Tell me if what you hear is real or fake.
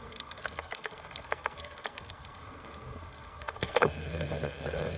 fake